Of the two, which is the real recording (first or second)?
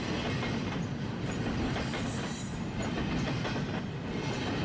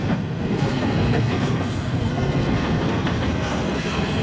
first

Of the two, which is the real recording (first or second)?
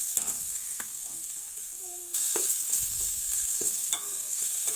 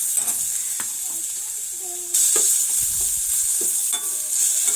second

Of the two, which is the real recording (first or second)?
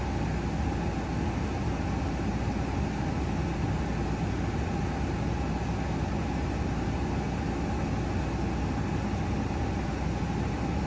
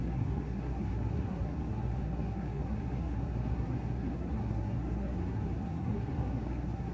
first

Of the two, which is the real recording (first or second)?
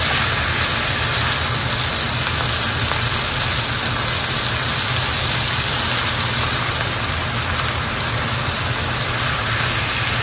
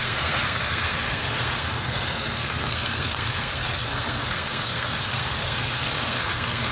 first